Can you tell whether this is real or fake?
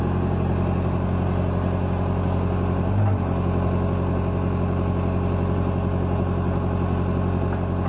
real